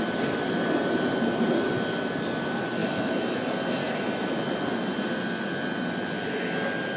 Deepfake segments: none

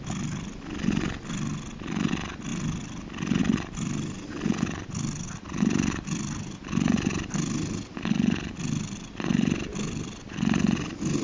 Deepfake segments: none

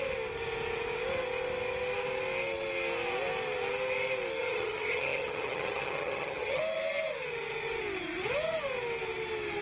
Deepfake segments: 4.4-6.6 (vocoder, HiFi-GAN)

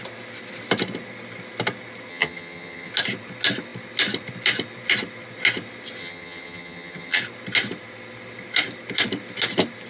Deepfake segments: 2.1-2.9 (vocoder, HiFi-GAN); 6.0-7.2

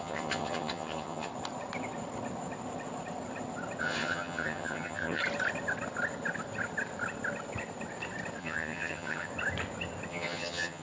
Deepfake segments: 0.0-1.3 (vocoder, HiFi-GAN); 3.8-5.2; 8.4-9.3; 10.1-10.8